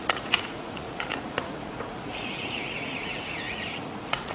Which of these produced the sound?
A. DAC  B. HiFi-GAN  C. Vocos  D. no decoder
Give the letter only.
C